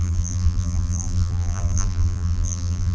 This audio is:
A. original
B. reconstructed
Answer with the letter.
B